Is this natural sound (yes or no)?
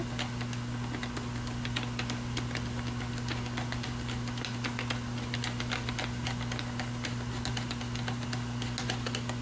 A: yes